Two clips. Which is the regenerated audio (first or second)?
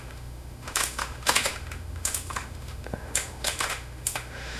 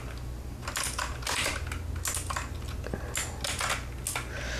first